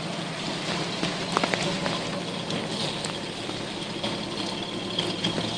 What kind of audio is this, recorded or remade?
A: recorded